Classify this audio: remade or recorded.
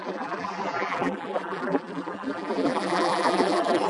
remade